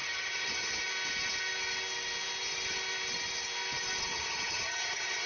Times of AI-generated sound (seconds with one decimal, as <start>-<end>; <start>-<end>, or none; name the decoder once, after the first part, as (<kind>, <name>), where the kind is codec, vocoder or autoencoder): 0.0-0.8 (vocoder, HiFi-GAN); 4.1-5.3